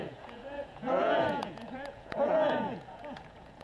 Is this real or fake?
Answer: fake